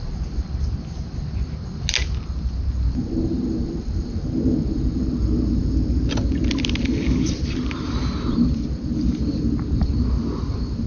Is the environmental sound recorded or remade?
recorded